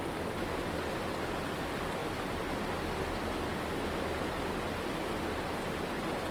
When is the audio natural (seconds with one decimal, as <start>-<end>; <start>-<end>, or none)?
0.0-6.3